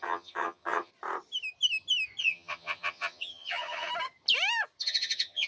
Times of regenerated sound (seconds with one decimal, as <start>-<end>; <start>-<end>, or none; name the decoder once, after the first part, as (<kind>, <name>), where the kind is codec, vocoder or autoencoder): 0.0-0.9 (vocoder, HiFi-GAN); 2.2-3.9; 4.8-5.5